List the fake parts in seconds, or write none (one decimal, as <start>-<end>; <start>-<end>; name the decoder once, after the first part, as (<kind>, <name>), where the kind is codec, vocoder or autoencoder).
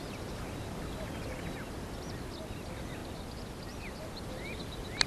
none